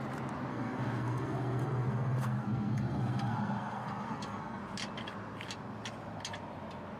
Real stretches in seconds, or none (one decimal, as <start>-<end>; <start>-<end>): 0.0-0.5; 4.6-7.0